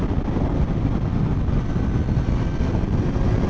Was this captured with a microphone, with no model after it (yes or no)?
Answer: yes